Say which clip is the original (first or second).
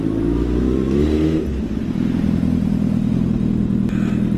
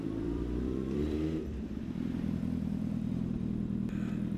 first